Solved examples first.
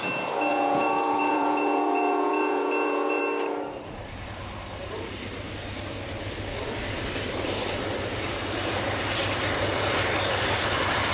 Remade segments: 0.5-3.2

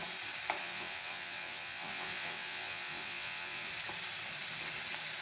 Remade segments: 0.6-3.7

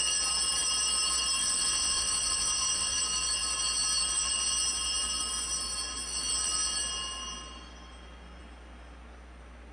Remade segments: 1.4-3.0

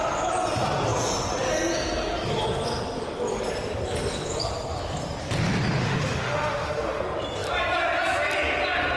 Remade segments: 5.8-7.0

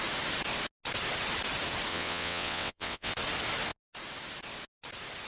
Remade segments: 1.9-3.1

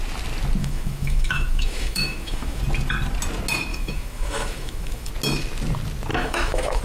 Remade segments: 0.6-2.6; 3.7-5.1; 6.1-6.8